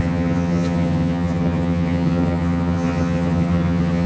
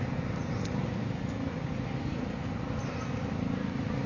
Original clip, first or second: second